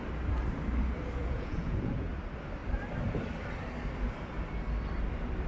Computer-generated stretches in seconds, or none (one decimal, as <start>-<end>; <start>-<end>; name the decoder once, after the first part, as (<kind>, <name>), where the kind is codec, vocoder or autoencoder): 1.2-2.1 (vocoder, Vocos)